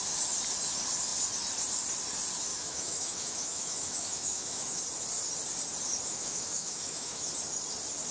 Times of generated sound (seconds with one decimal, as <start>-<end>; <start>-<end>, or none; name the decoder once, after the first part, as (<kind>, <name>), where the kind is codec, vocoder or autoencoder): 2.5-4.8 (autoencoder, DAC-VAE); 6.1-7.3